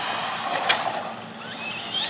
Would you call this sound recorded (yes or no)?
yes